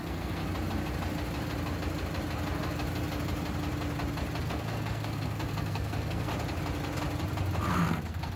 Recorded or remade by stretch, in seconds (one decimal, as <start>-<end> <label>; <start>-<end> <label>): 0.0-0.4 remade; 0.4-4.4 recorded; 4.4-6.3 remade; 6.3-7.7 recorded; 7.7-8.4 remade